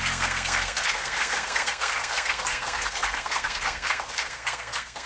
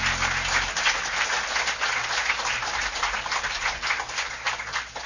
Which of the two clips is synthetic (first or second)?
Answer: first